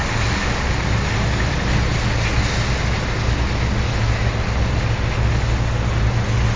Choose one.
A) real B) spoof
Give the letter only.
A